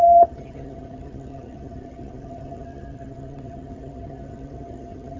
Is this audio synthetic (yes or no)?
yes